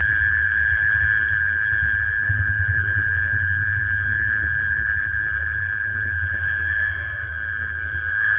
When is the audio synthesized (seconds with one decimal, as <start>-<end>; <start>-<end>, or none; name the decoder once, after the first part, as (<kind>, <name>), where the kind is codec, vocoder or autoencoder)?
0.0-8.4 (codec, SNAC)